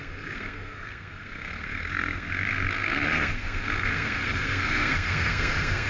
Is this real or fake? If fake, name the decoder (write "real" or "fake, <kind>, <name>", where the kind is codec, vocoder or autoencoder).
fake, codec, SNAC